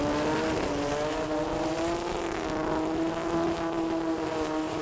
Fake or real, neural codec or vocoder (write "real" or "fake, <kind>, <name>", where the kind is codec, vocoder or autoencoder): real